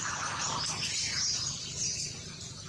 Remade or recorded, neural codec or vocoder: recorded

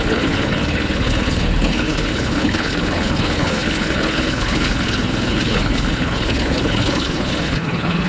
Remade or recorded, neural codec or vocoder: remade, codec, HILCodec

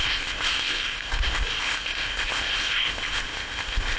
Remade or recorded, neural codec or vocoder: remade, codec, ZipCodec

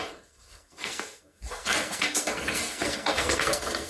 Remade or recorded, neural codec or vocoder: remade, codec, SNAC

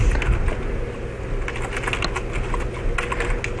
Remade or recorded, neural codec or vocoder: recorded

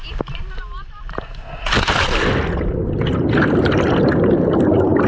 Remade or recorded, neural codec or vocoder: recorded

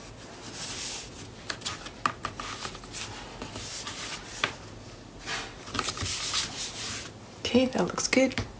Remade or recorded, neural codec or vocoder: recorded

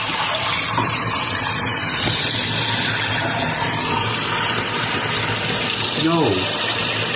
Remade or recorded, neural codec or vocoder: recorded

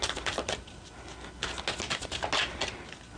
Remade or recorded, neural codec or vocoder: recorded